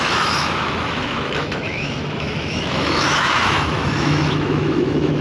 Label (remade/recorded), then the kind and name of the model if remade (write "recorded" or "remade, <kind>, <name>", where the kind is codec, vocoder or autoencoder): remade, autoencoder, DAC-VAE